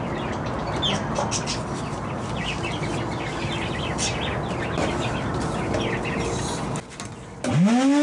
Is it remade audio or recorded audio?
recorded